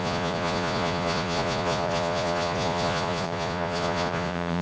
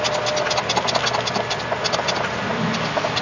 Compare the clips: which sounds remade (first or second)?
first